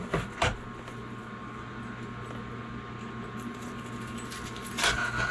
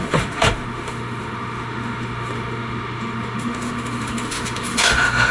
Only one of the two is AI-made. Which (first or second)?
second